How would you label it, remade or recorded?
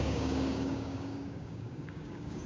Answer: remade